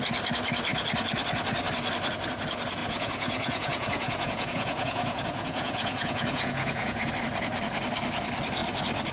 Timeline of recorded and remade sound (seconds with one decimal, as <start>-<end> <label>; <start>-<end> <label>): 0.0-2.8 recorded; 2.8-7.1 remade; 7.1-9.1 recorded

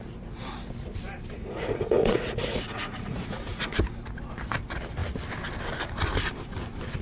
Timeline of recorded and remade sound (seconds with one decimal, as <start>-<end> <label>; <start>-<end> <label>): 0.0-1.4 recorded; 1.4-3.8 remade; 3.8-7.0 recorded